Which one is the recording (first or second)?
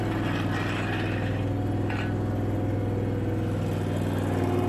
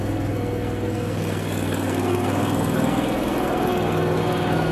first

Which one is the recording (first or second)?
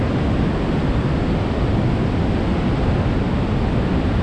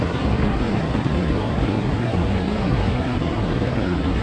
first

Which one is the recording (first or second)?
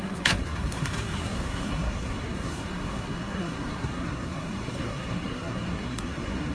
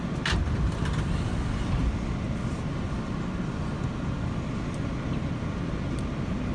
second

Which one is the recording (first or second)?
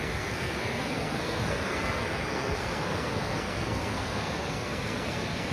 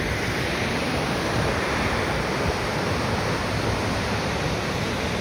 second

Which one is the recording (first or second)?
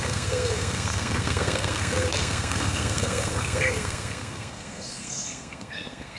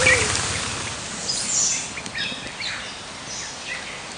second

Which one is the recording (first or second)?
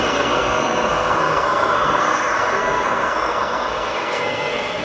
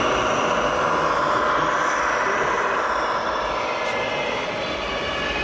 second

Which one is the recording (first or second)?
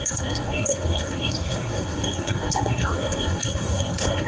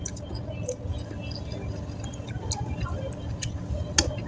second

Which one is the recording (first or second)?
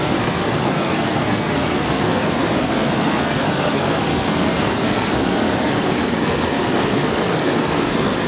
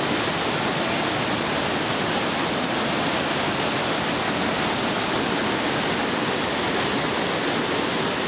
second